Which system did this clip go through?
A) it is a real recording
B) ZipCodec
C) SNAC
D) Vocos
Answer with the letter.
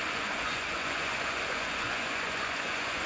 D